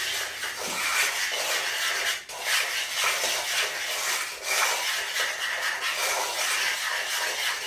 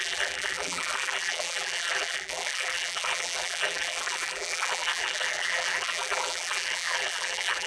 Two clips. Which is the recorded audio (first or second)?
first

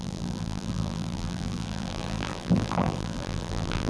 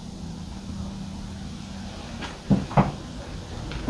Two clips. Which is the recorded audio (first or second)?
second